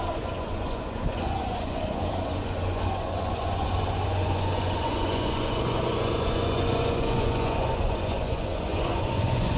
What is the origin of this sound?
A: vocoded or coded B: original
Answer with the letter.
A